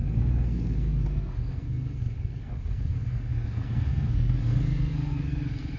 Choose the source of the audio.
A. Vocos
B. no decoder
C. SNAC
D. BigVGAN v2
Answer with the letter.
C